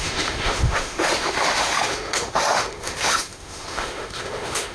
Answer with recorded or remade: remade